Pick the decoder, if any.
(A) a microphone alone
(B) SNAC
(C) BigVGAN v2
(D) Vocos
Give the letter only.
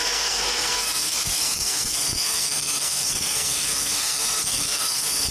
B